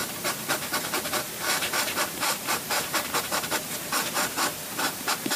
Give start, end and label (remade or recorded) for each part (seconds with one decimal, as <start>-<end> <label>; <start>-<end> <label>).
0.0-5.4 remade